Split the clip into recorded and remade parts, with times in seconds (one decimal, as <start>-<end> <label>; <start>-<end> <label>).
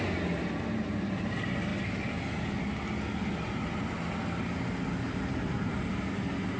0.0-6.6 recorded